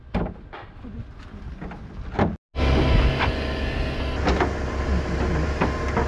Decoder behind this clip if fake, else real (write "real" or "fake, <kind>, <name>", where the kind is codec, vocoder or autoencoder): real